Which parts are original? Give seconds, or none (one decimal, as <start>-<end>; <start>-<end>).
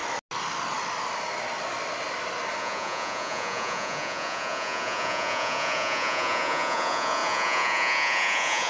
0.0-2.6